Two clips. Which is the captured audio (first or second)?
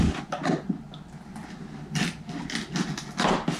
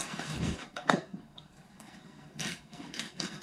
first